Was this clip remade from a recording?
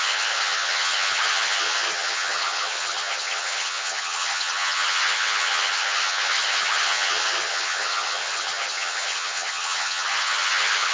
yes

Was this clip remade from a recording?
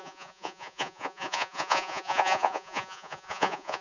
yes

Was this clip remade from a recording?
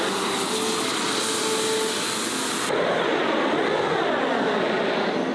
no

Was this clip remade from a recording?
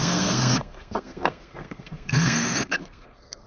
yes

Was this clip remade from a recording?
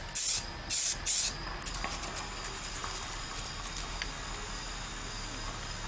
no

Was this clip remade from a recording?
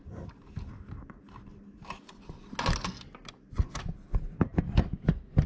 no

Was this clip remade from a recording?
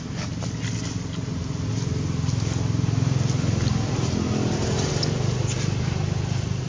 no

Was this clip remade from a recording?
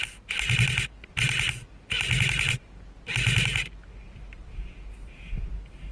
no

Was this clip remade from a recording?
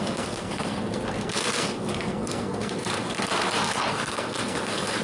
yes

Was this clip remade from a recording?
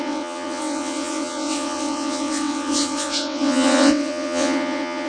yes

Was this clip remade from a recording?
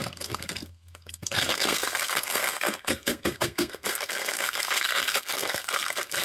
yes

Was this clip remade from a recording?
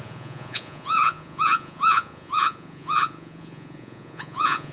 yes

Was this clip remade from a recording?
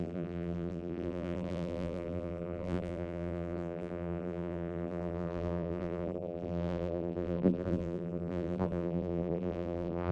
yes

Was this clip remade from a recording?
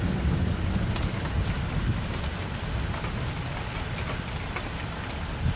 no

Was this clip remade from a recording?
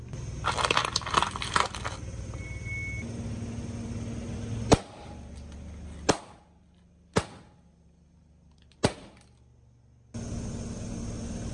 no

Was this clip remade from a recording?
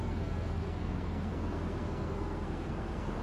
yes